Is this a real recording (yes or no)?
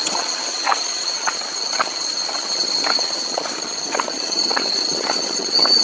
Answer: no